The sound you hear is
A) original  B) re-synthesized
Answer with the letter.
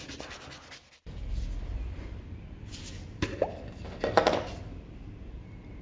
A